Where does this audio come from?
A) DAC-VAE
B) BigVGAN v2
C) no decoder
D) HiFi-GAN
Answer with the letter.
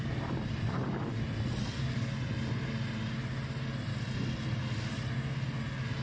C